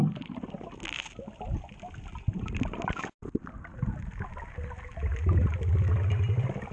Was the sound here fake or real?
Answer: real